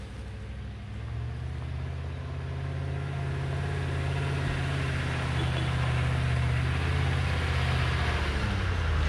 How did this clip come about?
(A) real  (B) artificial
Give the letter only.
A